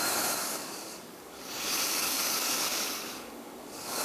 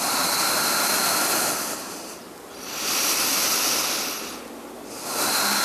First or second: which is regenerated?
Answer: first